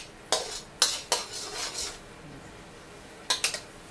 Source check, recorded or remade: recorded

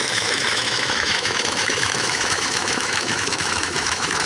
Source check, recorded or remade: remade